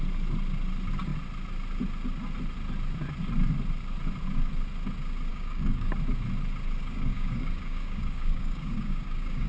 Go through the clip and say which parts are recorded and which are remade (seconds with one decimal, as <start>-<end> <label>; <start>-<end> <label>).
0.0-5.3 recorded; 5.3-5.9 remade; 5.9-6.8 recorded; 6.8-9.5 remade